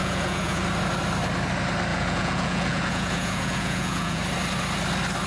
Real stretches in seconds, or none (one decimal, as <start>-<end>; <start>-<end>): 0.6-1.9; 4.2-5.3